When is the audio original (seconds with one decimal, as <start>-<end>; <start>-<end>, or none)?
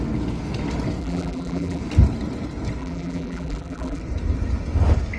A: 0.0-1.0; 1.8-2.8; 4.0-5.2